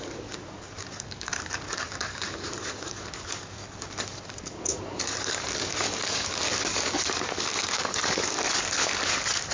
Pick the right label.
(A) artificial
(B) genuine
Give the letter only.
A